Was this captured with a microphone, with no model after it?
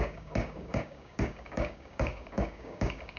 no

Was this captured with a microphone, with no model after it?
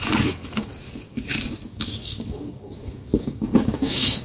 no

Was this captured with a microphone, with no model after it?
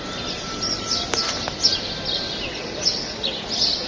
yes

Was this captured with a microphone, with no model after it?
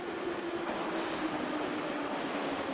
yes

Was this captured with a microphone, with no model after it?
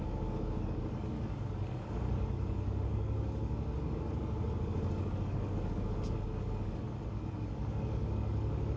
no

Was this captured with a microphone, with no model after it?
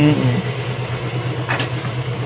yes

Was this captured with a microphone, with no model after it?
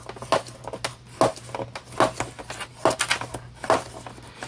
yes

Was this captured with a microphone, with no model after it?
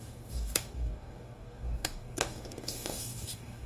no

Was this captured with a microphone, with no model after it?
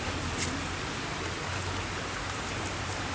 yes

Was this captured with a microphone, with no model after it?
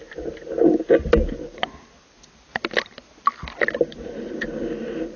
yes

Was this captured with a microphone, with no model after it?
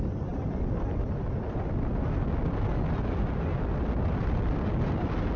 yes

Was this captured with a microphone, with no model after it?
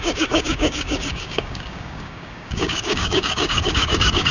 no